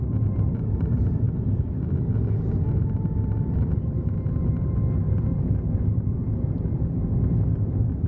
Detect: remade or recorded recorded